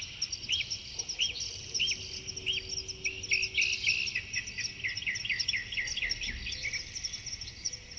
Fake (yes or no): no